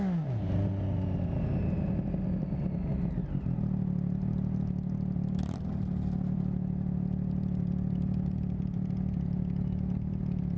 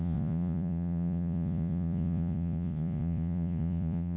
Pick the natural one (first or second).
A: first